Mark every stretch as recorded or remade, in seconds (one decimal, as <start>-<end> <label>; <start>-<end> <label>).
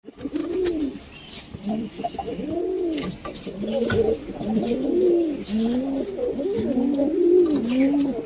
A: 0.0-0.4 recorded; 0.4-1.9 remade; 1.9-8.3 recorded